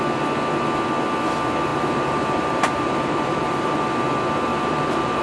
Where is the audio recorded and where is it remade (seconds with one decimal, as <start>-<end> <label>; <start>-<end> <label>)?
0.0-1.7 recorded; 1.7-3.8 remade; 3.8-4.5 recorded; 4.5-5.2 remade